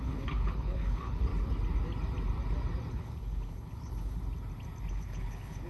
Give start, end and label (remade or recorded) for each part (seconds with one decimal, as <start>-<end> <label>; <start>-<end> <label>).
0.0-1.3 remade; 1.3-2.9 recorded; 2.9-4.2 remade; 4.2-4.9 recorded; 4.9-5.7 remade